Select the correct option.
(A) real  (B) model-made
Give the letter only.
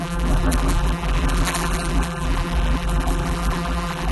B